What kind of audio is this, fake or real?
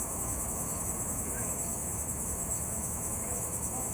fake